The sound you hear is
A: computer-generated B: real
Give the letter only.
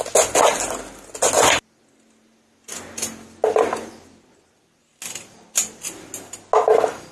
B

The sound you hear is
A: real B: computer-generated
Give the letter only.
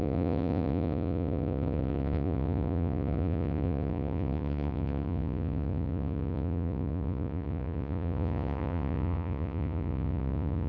B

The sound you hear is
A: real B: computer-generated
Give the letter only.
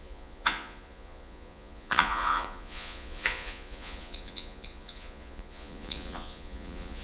B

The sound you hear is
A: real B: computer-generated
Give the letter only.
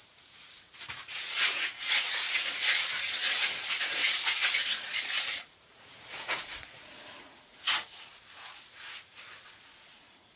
B